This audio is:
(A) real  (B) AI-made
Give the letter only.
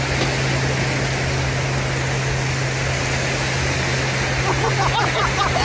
A